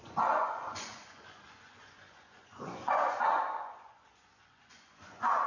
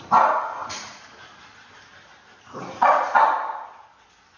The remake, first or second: first